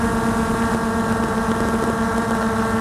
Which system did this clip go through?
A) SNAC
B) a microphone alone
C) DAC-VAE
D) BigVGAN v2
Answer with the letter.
B